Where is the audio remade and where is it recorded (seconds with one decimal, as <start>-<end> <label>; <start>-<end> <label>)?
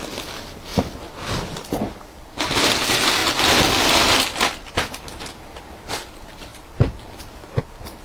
0.0-8.0 recorded